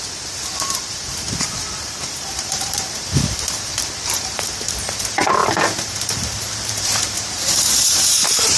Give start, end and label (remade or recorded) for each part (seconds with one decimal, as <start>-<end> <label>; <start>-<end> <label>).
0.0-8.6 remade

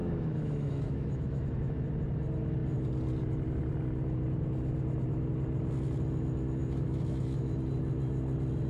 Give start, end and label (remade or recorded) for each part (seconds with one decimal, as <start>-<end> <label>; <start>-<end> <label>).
0.0-1.8 remade; 1.8-6.6 recorded; 6.6-7.5 remade; 7.5-8.7 recorded

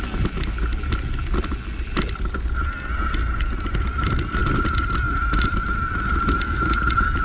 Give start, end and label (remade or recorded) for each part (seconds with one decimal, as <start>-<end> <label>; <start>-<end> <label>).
0.0-7.2 recorded

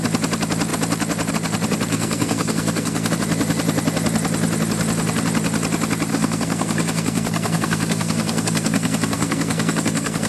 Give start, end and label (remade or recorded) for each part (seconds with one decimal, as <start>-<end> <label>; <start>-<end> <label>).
0.0-1.9 recorded; 1.9-3.1 remade; 3.1-6.1 recorded; 6.1-10.3 remade

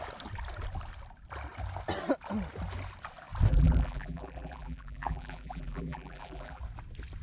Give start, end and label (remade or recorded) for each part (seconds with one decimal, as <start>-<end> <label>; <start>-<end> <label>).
0.0-3.5 recorded; 3.5-6.6 remade; 6.6-7.2 recorded

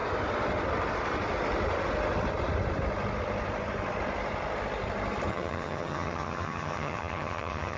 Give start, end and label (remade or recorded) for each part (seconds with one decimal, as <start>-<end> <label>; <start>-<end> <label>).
0.0-5.3 recorded; 5.3-7.8 remade

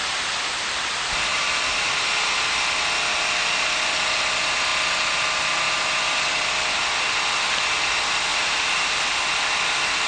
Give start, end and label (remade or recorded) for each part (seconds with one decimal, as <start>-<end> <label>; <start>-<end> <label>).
0.0-1.3 recorded; 1.3-1.9 remade; 1.9-8.3 recorded; 8.3-9.2 remade; 9.2-10.1 recorded